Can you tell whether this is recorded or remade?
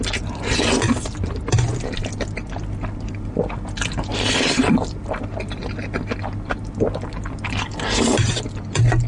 recorded